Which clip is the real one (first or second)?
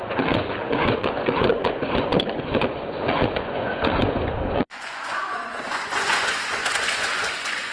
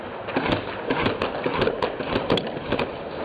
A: second